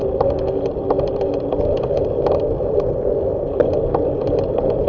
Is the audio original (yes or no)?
yes